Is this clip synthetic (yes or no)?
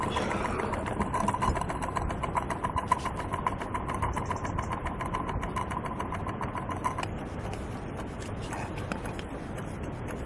no